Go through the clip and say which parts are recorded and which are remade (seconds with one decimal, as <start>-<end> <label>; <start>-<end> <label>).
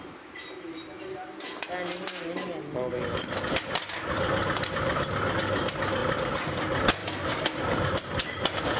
0.0-6.0 recorded; 6.0-6.6 remade; 6.6-7.0 recorded; 7.0-8.8 remade